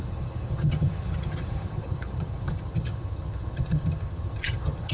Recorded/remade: remade